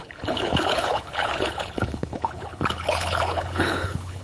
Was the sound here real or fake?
fake